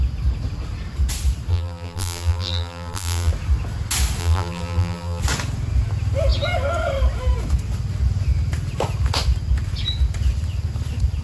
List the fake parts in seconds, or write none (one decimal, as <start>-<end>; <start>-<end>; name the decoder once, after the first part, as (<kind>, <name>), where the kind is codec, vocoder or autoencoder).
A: 1.5-3.3 (vocoder, BigVGAN v2); 4.2-5.2